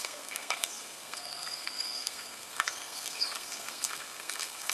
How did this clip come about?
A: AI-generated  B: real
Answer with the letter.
A